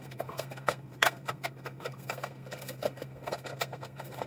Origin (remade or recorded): remade